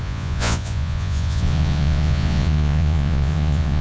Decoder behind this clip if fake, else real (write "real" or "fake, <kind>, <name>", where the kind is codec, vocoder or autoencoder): fake, vocoder, Vocos